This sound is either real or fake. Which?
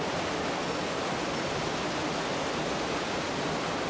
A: real